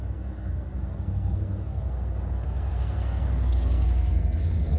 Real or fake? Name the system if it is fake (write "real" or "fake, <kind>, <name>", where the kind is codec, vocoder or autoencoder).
fake, codec, SNAC